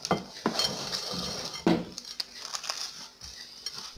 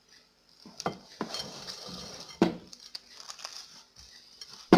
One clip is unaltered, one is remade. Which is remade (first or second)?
second